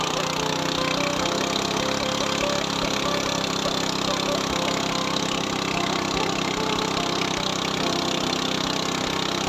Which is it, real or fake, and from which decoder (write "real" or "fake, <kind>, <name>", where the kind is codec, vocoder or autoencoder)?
real